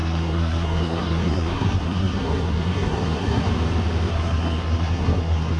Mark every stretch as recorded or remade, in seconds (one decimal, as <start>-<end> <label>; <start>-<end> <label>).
0.0-3.5 remade; 3.5-4.1 recorded; 4.1-5.6 remade